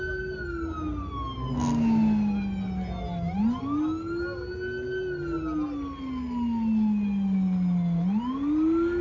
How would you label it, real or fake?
real